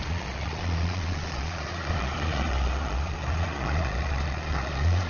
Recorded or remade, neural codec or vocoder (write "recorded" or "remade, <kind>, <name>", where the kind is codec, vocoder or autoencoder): remade, vocoder, Vocos